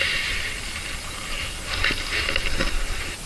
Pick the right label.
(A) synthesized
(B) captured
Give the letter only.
B